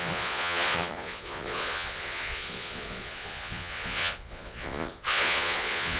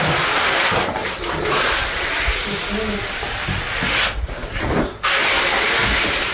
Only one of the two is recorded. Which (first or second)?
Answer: second